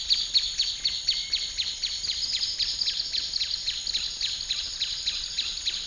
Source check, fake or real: real